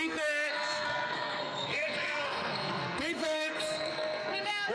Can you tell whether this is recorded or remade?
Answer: remade